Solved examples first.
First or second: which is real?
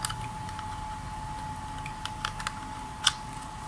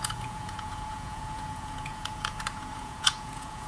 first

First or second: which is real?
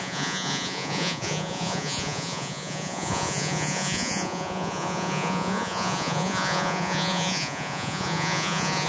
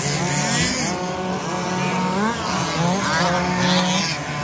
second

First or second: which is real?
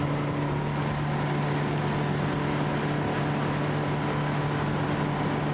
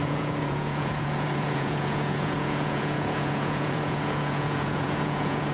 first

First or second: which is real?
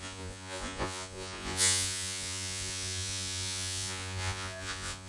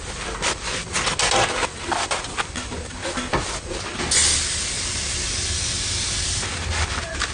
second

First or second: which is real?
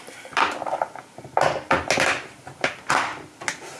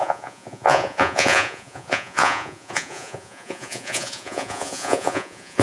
first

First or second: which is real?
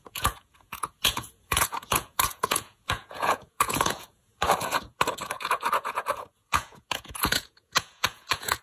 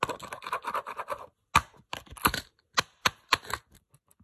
second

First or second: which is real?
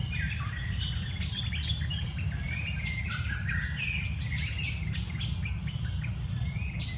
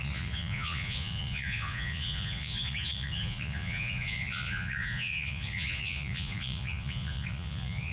first